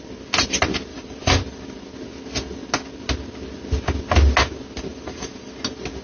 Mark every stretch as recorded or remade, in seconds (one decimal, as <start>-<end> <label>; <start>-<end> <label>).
0.0-0.9 recorded; 0.9-1.6 remade; 1.6-4.9 recorded; 4.9-5.5 remade; 5.5-6.0 recorded